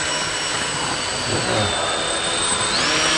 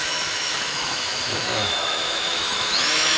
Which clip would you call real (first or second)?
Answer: first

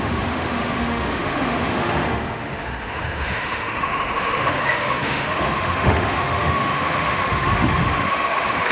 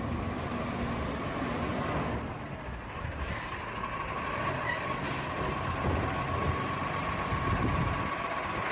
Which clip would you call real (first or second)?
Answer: second